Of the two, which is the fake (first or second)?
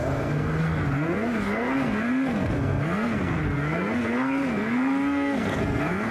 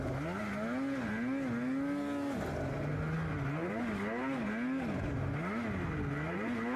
first